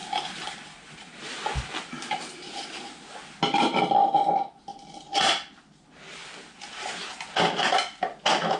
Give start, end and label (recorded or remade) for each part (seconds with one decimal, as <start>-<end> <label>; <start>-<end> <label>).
0.0-8.6 recorded